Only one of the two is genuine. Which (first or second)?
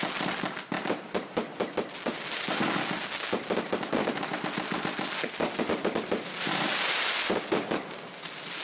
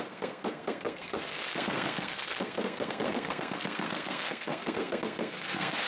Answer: first